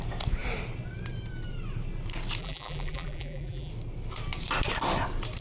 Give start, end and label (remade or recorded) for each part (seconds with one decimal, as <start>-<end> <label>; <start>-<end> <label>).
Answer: 0.0-2.4 recorded; 2.4-3.7 remade; 3.7-5.4 recorded